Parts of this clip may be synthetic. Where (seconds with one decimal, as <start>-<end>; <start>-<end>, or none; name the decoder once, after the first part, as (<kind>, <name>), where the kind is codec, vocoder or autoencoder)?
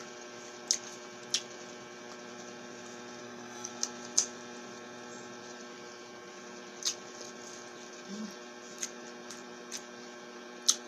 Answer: 3.2-3.7 (codec, SNAC)